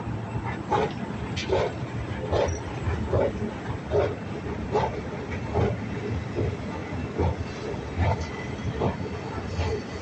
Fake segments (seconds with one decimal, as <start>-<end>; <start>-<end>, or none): none

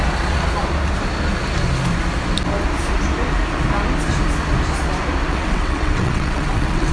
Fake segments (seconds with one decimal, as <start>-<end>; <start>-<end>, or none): 5.3-6.9